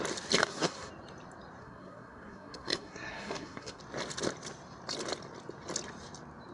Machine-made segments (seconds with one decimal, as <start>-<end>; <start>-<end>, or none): 0.4-0.9; 1.6-3.8